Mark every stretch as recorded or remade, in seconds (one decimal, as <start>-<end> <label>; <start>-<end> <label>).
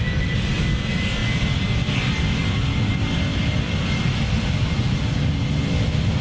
0.0-6.2 recorded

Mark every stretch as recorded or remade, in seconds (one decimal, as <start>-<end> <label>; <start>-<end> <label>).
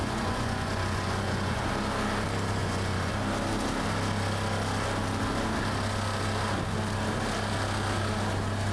0.0-1.7 remade; 1.7-2.6 recorded; 2.6-3.1 remade; 3.1-8.7 recorded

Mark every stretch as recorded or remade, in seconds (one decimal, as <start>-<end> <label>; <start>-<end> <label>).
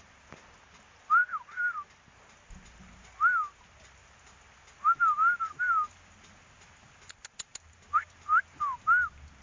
0.0-9.4 recorded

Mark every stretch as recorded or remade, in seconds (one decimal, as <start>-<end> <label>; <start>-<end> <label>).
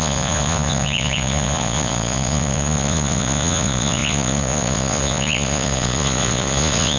0.0-7.0 remade